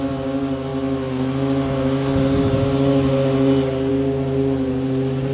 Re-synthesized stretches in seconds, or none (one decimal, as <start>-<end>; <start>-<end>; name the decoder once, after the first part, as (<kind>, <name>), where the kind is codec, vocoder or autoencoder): none

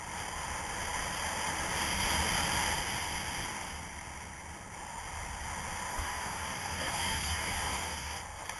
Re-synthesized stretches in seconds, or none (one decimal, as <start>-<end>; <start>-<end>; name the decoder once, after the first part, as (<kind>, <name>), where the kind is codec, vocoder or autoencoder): 5.9-8.2 (codec, DAC)

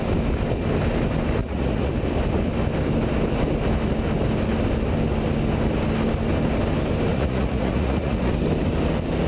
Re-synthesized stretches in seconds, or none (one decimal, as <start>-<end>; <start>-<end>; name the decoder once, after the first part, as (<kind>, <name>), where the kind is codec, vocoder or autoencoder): 1.4-1.9 (vocoder, Vocos); 7.1-8.3

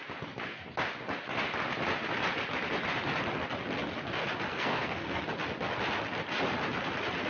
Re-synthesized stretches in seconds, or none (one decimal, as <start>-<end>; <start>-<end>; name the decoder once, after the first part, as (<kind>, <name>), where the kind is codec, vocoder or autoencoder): 4.5-5.2 (codec, SNAC)

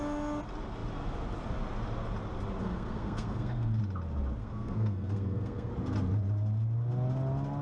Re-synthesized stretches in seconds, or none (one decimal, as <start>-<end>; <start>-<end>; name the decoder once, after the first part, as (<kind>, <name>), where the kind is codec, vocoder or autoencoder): 2.6-3.8 (codec, SNAC); 4.4-5.7